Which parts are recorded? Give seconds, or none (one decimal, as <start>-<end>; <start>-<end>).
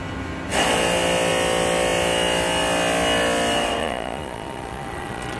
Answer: 0.0-3.8